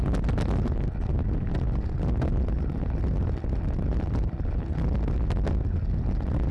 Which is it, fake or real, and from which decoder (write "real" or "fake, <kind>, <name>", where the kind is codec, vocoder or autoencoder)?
real